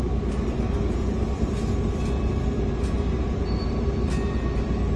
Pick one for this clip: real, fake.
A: real